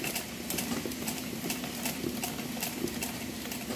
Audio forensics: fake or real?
real